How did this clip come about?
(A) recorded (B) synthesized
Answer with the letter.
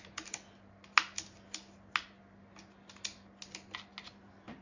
A